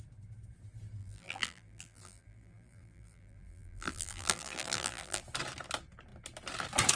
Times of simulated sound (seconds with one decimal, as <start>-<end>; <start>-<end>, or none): 1.0-5.2